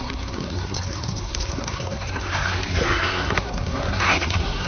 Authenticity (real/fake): fake